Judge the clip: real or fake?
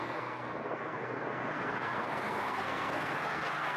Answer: fake